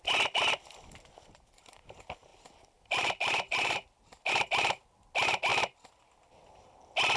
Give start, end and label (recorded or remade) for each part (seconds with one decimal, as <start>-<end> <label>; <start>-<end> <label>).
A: 0.0-2.3 recorded; 2.3-4.3 remade; 4.3-7.2 recorded

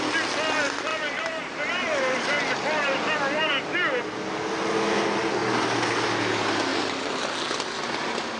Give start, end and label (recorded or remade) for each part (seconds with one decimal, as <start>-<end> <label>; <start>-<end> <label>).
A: 0.0-0.9 recorded; 0.9-4.0 remade; 4.0-6.7 recorded; 6.7-7.2 remade; 7.2-8.4 recorded